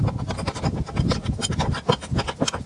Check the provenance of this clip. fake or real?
real